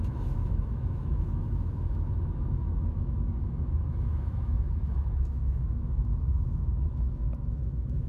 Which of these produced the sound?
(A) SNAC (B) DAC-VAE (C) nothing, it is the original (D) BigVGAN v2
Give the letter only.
B